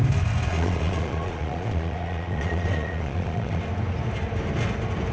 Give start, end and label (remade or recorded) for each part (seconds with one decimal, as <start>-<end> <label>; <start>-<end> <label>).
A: 0.0-0.5 recorded; 0.5-3.6 remade; 3.6-5.1 recorded